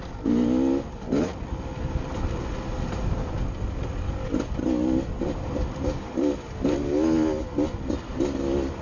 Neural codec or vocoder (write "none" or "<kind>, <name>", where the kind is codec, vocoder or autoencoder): none